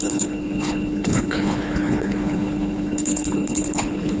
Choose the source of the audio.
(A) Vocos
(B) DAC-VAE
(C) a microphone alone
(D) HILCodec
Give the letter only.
D